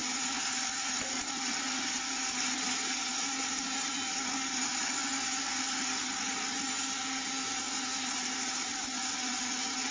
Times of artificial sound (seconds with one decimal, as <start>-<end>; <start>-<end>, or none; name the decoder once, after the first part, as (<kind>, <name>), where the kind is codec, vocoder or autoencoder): 0.0-0.9 (vocoder, BigVGAN v2); 5.0-5.8; 8.7-9.4

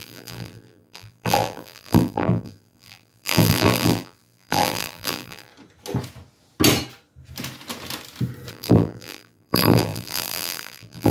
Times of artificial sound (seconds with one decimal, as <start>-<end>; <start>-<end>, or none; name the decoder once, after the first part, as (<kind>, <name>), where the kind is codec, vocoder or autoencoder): 0.0-5.5 (vocoder, BigVGAN v2); 8.5-11.1